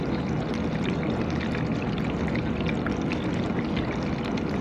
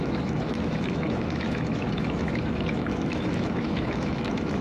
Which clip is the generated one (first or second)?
second